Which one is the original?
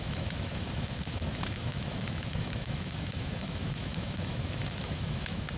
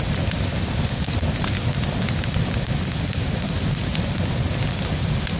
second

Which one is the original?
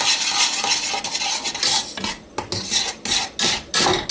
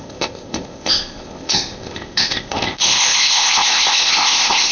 first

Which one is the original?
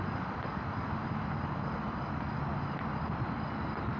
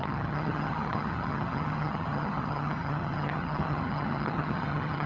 first